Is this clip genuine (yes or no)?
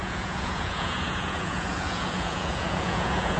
no